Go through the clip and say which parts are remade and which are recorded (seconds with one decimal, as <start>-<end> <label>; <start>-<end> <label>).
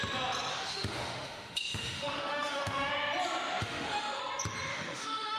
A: 0.0-0.5 recorded; 0.5-2.9 remade; 2.9-3.6 recorded; 3.6-4.2 remade; 4.2-4.7 recorded; 4.7-5.4 remade